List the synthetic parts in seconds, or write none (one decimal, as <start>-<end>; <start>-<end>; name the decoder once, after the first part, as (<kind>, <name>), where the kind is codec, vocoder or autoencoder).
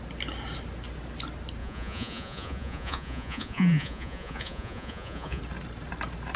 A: 1.6-5.4 (vocoder, Vocos)